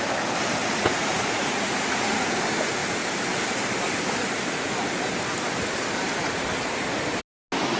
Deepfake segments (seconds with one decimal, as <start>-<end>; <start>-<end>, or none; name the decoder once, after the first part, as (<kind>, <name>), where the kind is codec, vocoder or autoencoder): 0.6-2.4 (vocoder, Vocos)